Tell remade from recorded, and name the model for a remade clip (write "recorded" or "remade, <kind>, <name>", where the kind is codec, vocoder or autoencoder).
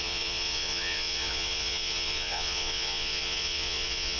remade, vocoder, Vocos